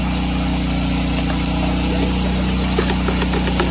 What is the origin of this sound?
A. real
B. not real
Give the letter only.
A